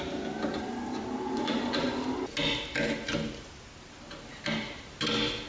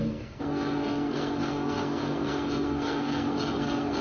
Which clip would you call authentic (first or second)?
first